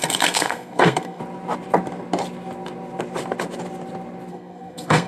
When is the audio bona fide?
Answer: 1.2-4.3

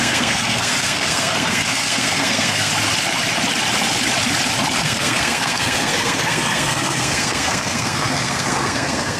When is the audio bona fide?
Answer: 2.7-4.8

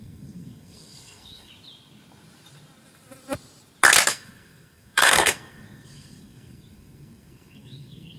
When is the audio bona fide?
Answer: 1.5-4.1

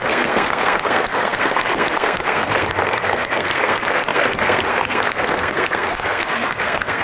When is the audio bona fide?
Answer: none

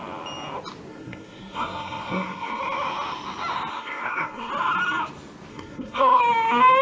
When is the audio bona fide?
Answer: 0.0-0.9; 2.6-3.7; 4.5-5.5; 6.2-6.8

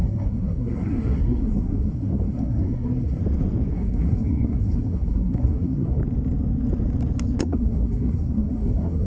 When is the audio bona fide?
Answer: 3.2-3.7; 6.0-7.4